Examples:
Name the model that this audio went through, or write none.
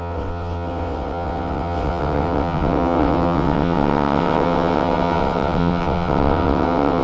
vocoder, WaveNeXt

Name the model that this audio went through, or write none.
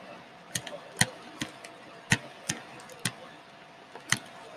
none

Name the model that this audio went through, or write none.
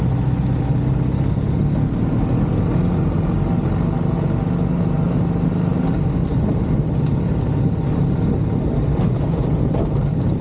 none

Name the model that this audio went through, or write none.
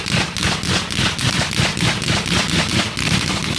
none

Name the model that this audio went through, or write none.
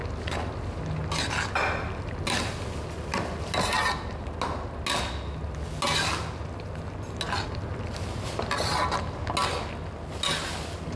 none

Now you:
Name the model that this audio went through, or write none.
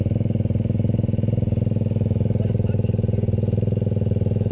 none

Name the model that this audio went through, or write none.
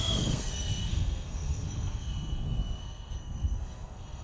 codec, SNAC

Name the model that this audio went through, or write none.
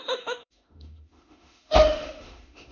autoencoder, DAC-VAE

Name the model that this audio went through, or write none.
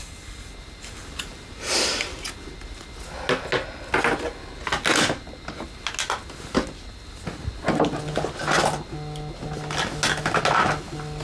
none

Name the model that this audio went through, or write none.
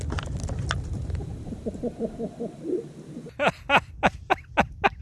none